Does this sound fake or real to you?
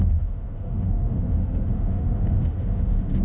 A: fake